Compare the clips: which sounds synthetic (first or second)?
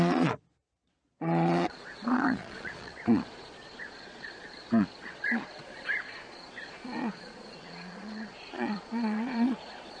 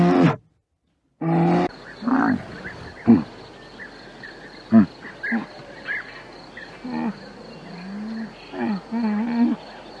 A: first